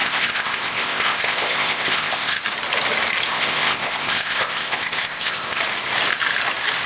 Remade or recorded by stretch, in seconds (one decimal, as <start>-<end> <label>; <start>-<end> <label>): 0.0-2.4 remade; 2.4-3.3 recorded; 3.3-5.6 remade; 5.6-6.9 recorded